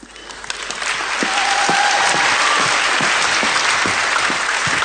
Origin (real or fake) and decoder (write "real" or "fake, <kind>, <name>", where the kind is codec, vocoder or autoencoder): real